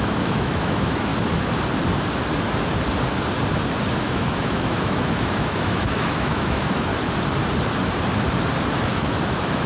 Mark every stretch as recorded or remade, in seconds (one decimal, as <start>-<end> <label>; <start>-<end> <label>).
0.0-1.1 remade; 1.1-4.0 recorded; 4.0-6.9 remade; 6.9-8.9 recorded; 8.9-9.7 remade